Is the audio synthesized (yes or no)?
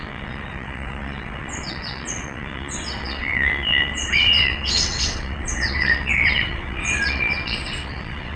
yes